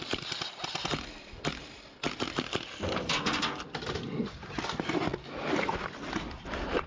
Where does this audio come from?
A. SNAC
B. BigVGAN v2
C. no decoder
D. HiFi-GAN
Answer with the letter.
C